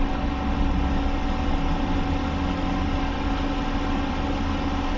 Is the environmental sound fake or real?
real